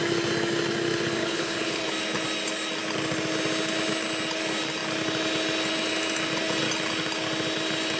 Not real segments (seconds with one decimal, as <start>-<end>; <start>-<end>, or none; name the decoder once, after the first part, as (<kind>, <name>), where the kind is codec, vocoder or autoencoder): 1.2-1.8 (codec, HILCodec)